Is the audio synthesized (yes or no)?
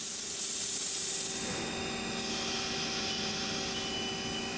no